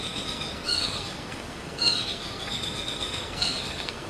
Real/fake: fake